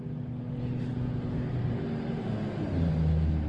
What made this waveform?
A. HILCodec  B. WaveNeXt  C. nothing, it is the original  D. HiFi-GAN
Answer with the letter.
C